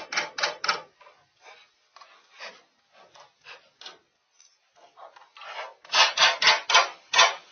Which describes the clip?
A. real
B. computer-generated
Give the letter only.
A